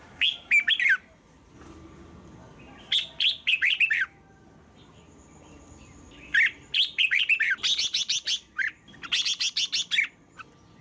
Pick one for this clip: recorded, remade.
recorded